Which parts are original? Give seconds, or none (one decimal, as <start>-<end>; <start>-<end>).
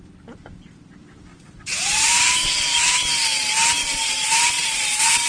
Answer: 0.0-1.3; 3.0-3.8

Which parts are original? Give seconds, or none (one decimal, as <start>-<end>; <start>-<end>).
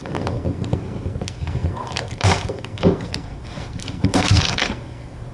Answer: none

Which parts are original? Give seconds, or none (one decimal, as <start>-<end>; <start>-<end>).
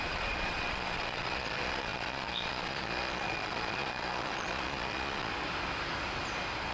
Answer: 5.3-6.7